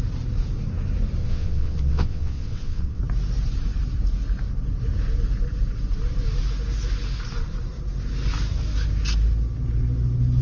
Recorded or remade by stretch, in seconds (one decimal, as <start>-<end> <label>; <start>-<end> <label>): 0.0-1.2 recorded; 1.2-3.0 remade; 3.0-10.4 recorded